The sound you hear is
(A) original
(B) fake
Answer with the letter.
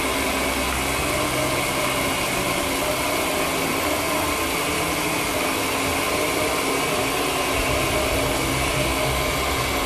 A